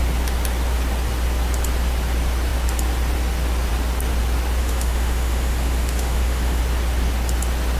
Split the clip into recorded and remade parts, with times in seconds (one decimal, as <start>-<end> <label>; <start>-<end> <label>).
0.0-4.6 recorded; 4.6-6.6 remade; 6.6-7.8 recorded